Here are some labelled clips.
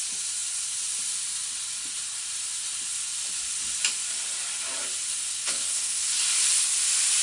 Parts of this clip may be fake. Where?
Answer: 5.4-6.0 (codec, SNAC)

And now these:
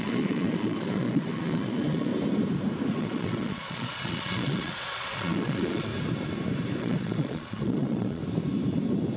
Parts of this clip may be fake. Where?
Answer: 0.0-2.1 (vocoder, Vocos); 2.9-5.9; 6.8-8.2

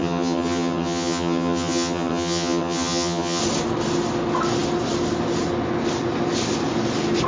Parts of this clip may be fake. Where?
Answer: 0.0-3.4 (vocoder, HiFi-GAN)

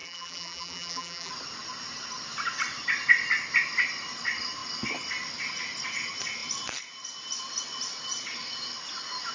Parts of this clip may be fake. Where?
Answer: 0.0-1.3 (vocoder, BigVGAN v2)

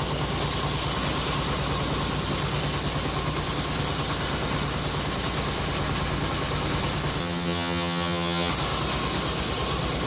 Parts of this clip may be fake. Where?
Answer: 7.2-8.5 (vocoder, HiFi-GAN)

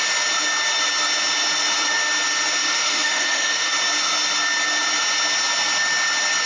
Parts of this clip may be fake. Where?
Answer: 2.6-3.7 (autoencoder, DAC-VAE)